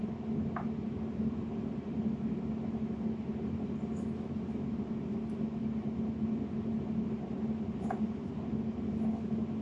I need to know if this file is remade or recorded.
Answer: recorded